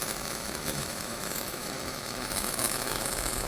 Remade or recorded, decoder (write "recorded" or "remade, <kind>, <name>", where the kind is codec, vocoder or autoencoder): remade, autoencoder, DAC-VAE